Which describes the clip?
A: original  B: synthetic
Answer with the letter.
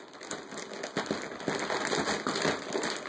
A